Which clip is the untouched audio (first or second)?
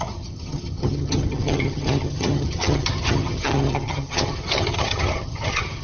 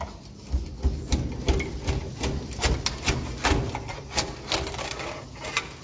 second